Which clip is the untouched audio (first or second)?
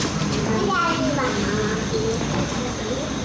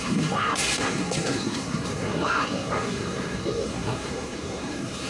first